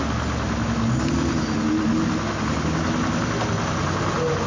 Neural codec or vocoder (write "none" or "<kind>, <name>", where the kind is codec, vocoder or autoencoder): none